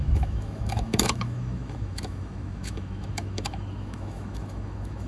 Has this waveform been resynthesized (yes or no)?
yes